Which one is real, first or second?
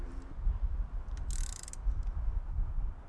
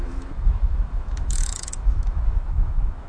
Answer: first